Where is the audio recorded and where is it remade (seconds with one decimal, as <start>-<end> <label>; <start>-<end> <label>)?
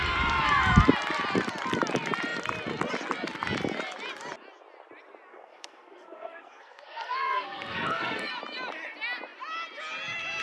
0.0-5.3 recorded; 5.3-8.3 remade; 8.3-10.4 recorded